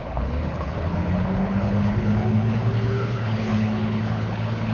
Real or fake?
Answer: fake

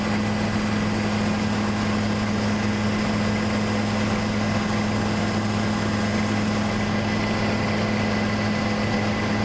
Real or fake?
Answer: real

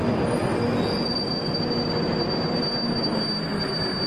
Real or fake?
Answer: real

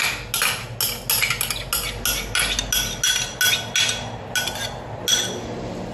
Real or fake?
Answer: real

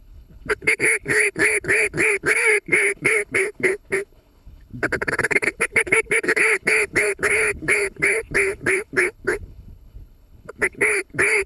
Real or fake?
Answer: fake